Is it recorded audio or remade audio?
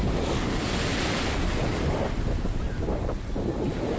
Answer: recorded